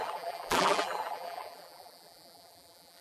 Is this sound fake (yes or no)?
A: yes